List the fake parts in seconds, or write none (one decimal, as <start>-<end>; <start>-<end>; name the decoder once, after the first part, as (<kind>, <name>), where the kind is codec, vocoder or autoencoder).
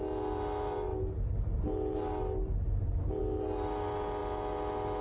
none